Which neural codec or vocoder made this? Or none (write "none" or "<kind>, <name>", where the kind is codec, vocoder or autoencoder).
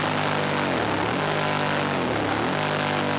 none